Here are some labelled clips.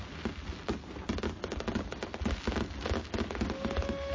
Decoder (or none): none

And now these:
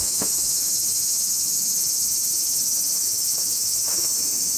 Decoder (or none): autoencoder, DAC-VAE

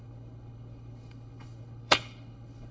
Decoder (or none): codec, HILCodec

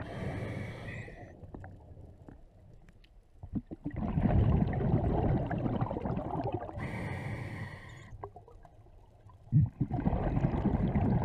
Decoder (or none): none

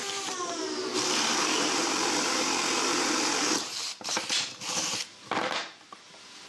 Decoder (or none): vocoder, BigVGAN v2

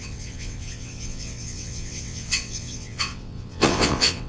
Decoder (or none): vocoder, WaveNeXt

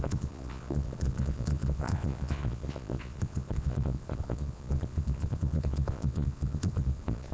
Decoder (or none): vocoder, Vocos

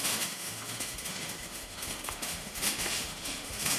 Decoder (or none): autoencoder, DAC-VAE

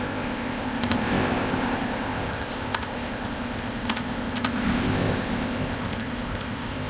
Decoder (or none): codec, ZipCodec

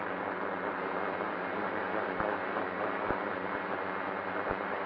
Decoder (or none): none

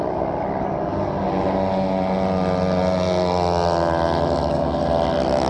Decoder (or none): none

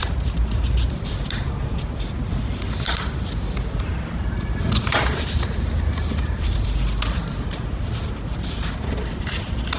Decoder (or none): none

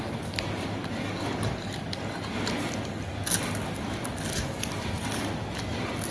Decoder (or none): none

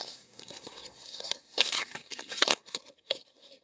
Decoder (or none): codec, SNAC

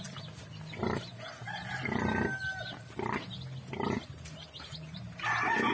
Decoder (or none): none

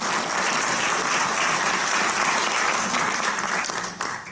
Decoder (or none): vocoder, BigVGAN v2